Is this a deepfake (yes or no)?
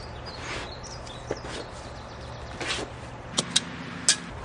no